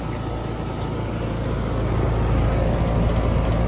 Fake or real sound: real